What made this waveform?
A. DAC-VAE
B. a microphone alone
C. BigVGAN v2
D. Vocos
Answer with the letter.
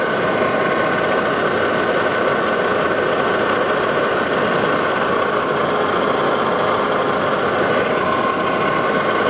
B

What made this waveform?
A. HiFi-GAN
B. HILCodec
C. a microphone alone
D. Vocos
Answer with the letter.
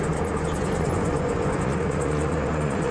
D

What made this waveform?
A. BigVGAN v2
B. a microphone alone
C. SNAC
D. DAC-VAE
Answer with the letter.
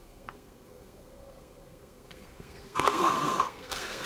C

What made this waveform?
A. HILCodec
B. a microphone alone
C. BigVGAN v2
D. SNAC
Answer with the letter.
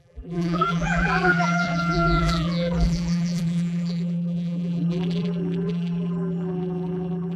C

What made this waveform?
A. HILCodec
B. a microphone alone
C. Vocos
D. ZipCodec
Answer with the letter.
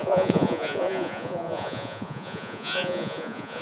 C